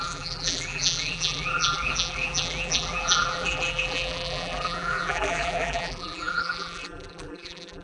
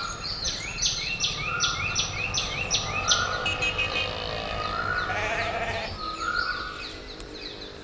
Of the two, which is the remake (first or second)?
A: first